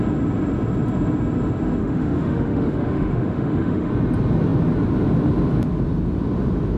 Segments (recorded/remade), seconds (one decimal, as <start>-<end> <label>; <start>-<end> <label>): 0.0-1.8 recorded; 1.8-3.9 remade; 3.9-6.8 recorded